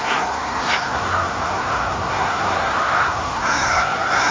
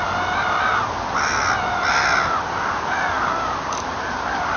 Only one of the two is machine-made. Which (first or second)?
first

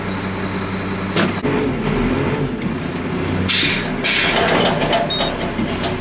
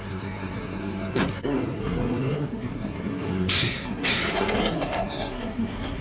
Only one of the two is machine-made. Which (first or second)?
second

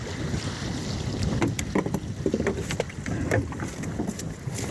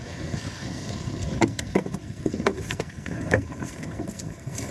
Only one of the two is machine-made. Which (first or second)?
second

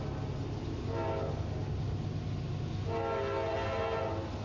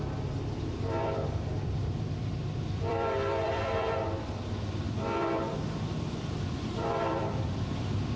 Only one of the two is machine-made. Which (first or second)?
second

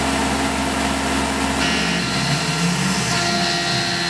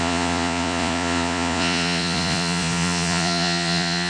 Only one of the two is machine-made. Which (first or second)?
second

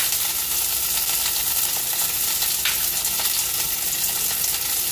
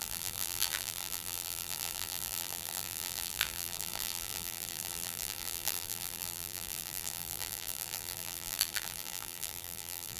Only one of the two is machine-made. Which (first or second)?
second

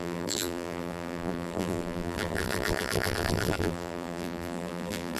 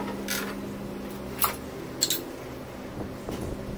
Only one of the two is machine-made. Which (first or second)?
first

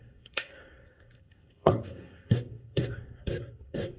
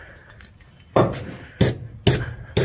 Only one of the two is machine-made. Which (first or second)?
first